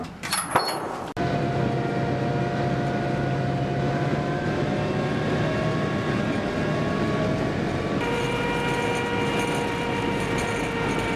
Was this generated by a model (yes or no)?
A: no